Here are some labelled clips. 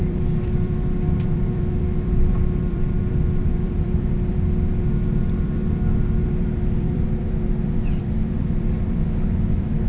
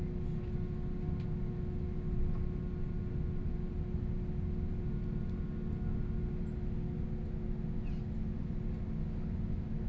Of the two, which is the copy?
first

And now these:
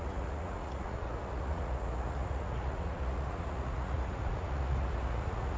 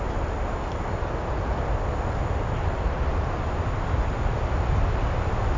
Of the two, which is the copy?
first